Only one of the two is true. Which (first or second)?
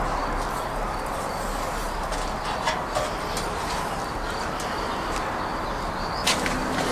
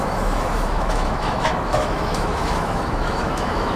first